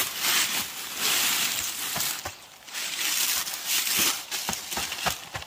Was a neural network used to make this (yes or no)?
yes